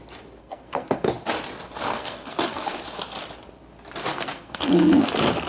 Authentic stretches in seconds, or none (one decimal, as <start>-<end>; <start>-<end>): 0.0-0.4; 1.1-1.9; 2.8-4.1; 5.1-5.5